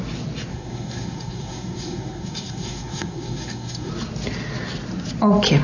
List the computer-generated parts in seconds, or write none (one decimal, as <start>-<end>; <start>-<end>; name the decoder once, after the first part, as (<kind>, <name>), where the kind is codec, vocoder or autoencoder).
0.5-3.9 (codec, SNAC)